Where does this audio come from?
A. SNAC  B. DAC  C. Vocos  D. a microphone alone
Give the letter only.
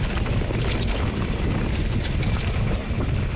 D